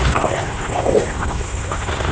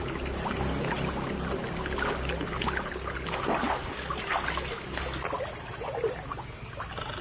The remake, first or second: first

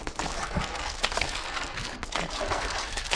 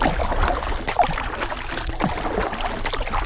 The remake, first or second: first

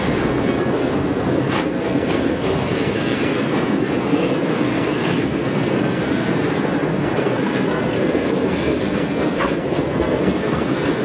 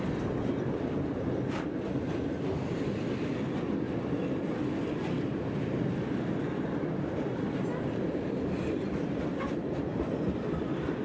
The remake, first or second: first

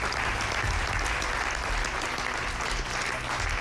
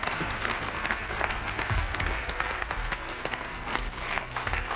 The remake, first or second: second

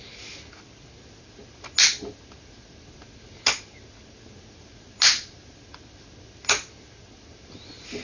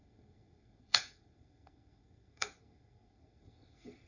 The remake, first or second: second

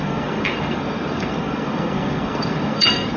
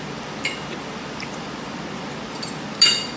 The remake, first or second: first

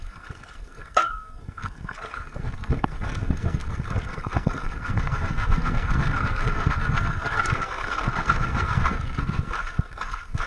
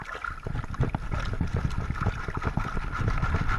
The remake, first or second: first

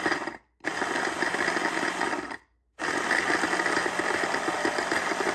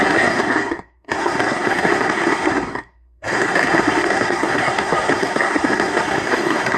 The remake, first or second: second